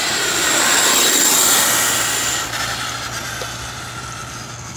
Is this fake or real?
real